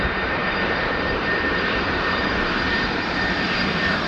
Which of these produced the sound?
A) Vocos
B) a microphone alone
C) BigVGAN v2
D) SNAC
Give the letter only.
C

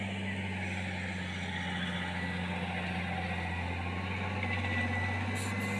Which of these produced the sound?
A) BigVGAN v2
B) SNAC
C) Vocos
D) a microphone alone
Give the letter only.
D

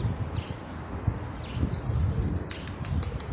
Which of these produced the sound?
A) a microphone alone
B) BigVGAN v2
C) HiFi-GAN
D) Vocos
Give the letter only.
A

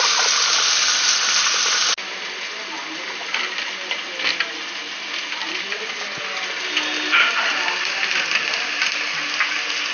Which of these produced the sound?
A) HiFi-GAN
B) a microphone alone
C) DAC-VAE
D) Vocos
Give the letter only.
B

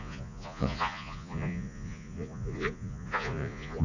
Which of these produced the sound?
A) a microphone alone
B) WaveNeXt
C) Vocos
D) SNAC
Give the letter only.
C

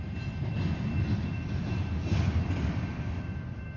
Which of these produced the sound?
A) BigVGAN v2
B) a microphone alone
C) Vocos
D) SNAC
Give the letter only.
B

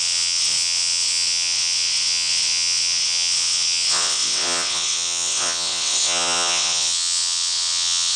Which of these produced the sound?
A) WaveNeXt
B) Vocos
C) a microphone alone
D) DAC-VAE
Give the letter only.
A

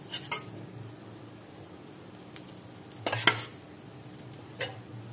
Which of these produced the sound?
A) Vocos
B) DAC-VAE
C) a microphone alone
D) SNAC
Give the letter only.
C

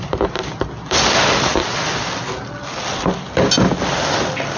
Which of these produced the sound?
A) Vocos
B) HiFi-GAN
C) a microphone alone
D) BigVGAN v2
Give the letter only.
C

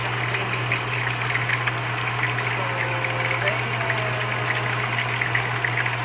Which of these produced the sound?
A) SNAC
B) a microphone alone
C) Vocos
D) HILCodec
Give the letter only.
B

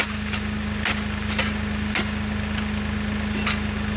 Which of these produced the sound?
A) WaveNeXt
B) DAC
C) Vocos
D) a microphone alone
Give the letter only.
D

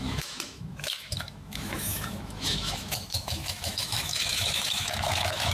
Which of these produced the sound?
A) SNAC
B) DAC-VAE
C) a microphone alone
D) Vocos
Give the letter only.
B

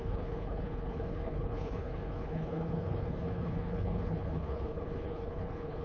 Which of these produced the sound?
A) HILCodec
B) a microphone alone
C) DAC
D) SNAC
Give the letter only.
A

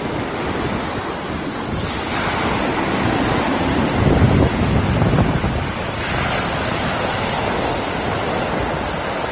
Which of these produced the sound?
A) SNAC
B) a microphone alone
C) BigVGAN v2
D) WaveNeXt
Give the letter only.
B